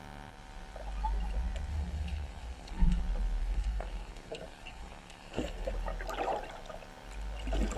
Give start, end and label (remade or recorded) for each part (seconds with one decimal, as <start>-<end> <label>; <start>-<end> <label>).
0.0-1.7 recorded; 1.7-3.0 remade; 3.0-3.4 recorded; 3.4-5.7 remade; 5.7-7.8 recorded